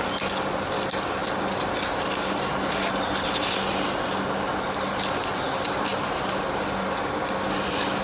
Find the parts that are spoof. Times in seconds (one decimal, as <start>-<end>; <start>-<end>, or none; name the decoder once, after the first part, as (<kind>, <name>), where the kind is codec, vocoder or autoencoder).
none